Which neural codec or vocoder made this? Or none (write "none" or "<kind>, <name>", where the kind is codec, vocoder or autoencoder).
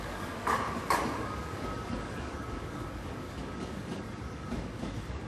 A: codec, DAC